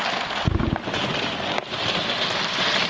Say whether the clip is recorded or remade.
recorded